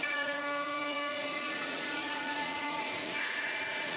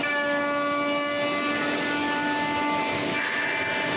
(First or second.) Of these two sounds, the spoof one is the first